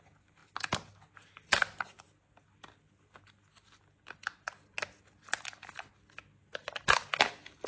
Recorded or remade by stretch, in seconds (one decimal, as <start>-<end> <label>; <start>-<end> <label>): 0.0-7.7 recorded